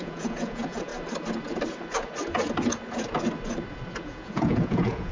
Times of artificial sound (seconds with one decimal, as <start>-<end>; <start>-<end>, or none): 0.0-0.9; 4.0-5.1